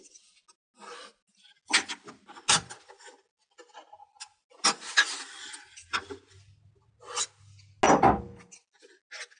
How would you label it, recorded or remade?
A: recorded